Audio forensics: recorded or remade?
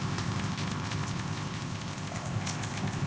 remade